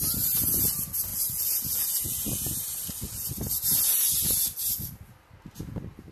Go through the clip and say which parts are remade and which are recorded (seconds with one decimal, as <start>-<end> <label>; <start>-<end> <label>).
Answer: 0.0-6.1 recorded